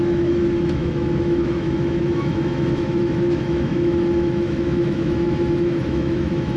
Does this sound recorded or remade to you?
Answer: remade